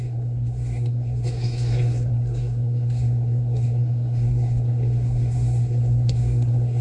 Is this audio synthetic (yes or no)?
yes